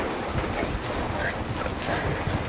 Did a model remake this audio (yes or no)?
no